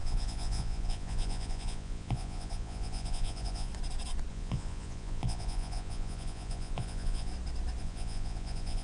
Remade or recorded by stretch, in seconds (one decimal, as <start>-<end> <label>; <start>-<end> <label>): 0.0-3.7 remade; 3.7-4.3 recorded; 4.3-7.3 remade; 7.3-7.8 recorded; 7.8-8.8 remade